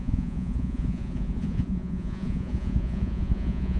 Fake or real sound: fake